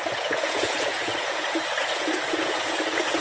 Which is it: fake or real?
fake